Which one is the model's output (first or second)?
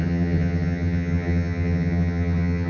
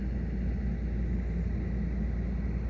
first